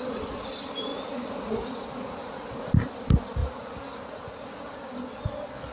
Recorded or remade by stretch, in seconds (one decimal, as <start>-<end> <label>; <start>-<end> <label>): 0.0-0.9 recorded; 0.9-2.7 remade; 2.7-3.4 recorded; 3.4-4.8 remade; 4.8-5.7 recorded